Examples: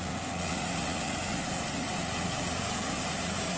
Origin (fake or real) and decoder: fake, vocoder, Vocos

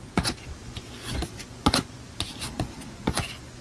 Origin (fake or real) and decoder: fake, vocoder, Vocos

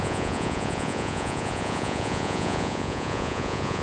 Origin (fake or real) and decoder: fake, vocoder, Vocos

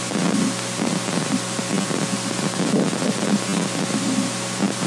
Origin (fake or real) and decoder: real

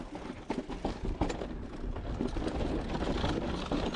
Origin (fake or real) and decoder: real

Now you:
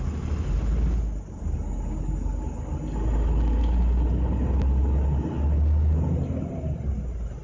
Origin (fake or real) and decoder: real